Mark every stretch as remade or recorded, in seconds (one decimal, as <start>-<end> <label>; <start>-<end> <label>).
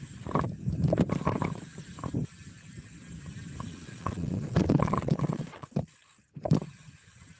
0.0-3.7 recorded; 3.7-5.8 remade; 5.8-7.4 recorded